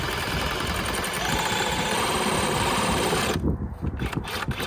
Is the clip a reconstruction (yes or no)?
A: no